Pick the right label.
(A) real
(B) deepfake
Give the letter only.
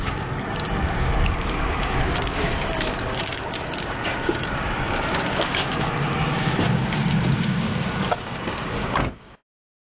B